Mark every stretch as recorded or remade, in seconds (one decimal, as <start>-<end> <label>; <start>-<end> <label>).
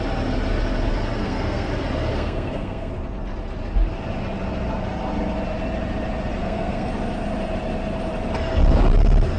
0.0-1.2 recorded; 1.2-1.7 remade; 1.7-2.1 recorded; 2.1-2.9 remade; 2.9-6.4 recorded; 6.4-6.9 remade; 6.9-9.4 recorded